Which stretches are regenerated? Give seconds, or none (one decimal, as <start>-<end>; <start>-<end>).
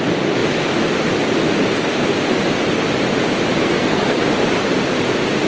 3.6-4.2